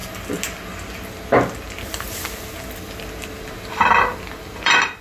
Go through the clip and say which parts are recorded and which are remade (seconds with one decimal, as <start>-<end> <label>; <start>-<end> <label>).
0.0-5.0 recorded

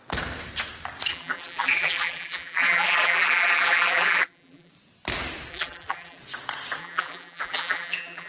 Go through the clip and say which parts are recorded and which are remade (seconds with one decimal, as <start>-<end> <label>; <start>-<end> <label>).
0.0-1.1 recorded; 1.1-4.7 remade; 4.7-5.5 recorded; 5.5-6.2 remade; 6.2-6.8 recorded; 6.8-8.3 remade

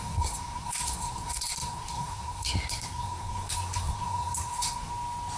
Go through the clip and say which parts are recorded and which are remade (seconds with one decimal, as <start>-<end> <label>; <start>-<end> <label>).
0.0-4.9 remade; 4.9-5.4 recorded

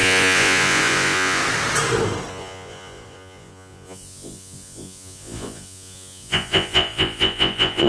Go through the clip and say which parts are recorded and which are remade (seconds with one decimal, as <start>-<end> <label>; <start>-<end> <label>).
0.0-1.4 remade; 1.4-2.3 recorded; 2.3-7.9 remade

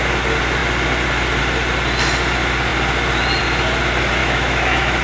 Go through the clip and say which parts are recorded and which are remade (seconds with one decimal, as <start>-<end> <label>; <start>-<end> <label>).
0.0-4.2 recorded; 4.2-5.0 remade

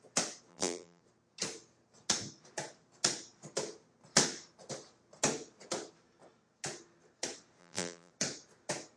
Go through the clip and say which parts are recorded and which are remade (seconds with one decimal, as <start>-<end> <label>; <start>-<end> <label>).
0.0-0.5 recorded; 0.5-1.0 remade; 1.0-7.6 recorded; 7.6-8.1 remade; 8.1-9.0 recorded

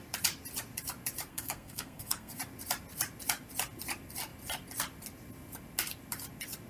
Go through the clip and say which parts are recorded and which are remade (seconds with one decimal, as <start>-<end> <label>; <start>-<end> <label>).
0.0-1.3 recorded; 1.3-2.4 remade; 2.4-6.7 recorded

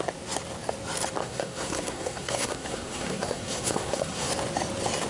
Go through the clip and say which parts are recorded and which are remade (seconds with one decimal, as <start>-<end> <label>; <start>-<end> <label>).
0.0-1.2 recorded; 1.2-4.3 remade; 4.3-5.1 recorded